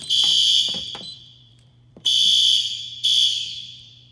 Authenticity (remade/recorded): remade